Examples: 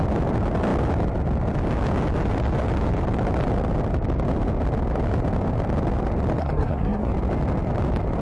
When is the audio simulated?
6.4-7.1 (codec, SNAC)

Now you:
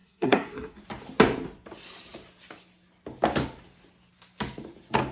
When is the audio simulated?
0.0-0.8 (codec, SNAC)

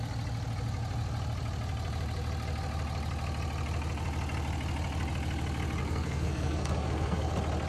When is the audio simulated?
5.8-7.3 (codec, SNAC)

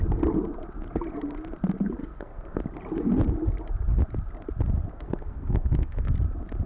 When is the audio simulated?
2.0-2.6 (codec, SNAC); 4.9-6.1

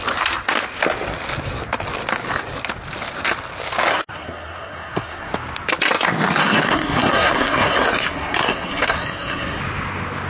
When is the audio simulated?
3.9-5.3 (codec, SNAC); 6.4-9.6

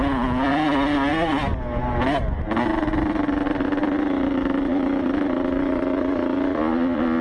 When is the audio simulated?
none

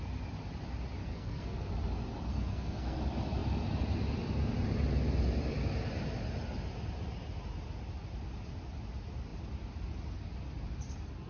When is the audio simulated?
1.0-1.7 (codec, SNAC); 2.3-3.0